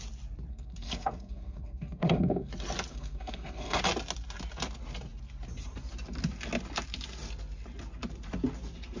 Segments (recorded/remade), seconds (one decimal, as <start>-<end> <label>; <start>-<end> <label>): 0.0-0.5 recorded; 0.5-2.5 remade; 2.5-2.9 recorded; 2.9-3.8 remade; 3.8-9.0 recorded